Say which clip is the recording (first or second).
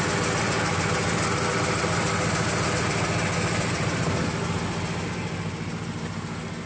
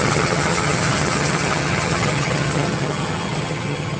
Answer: first